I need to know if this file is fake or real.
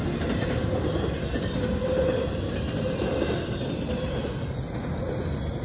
real